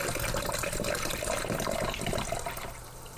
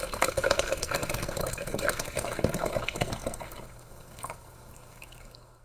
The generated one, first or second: second